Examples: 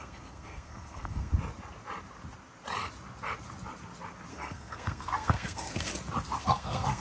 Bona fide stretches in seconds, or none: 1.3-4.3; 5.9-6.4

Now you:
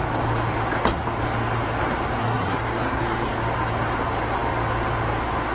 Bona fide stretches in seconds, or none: 0.0-2.2; 3.3-5.5

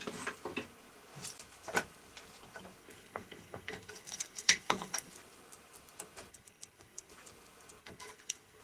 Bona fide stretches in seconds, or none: 0.0-2.8; 5.1-6.3; 7.1-7.8

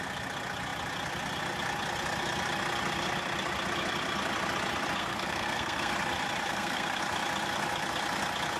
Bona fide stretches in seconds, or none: 0.0-5.0; 5.9-6.5; 7.0-8.6